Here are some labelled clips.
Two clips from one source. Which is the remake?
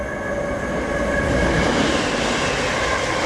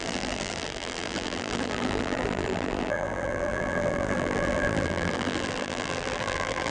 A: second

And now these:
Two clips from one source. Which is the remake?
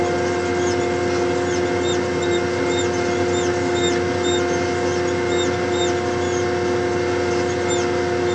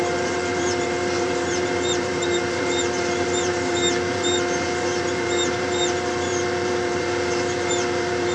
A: second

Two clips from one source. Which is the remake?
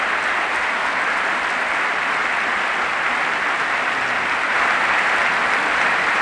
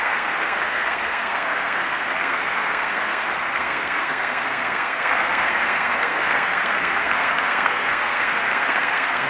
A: second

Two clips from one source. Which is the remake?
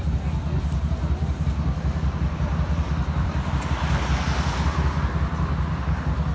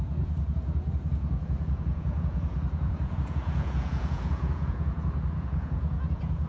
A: second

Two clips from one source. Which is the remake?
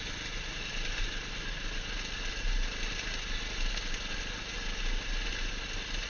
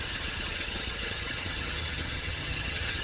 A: second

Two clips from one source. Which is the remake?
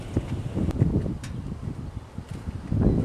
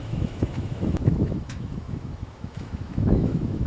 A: second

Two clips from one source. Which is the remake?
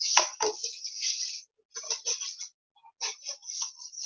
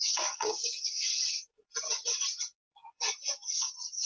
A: second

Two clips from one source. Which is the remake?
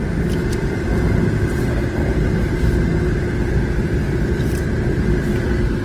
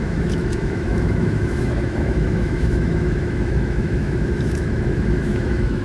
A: second